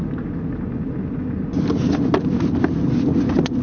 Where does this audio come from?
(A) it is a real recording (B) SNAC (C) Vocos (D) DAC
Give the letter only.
A